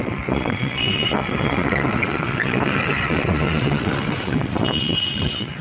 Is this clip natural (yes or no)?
no